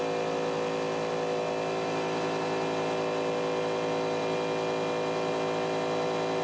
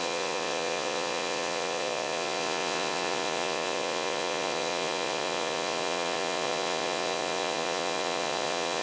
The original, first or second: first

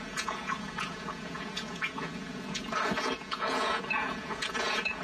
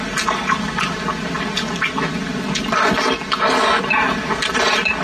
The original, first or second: second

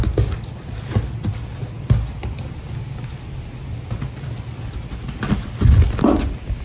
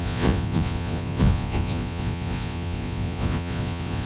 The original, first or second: first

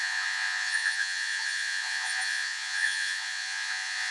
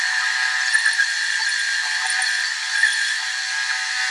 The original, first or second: second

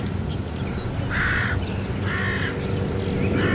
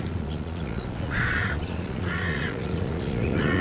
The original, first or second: first